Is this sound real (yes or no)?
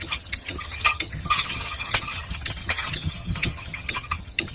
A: no